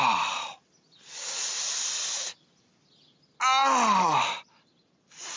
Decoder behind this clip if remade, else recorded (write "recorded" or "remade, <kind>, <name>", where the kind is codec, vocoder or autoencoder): recorded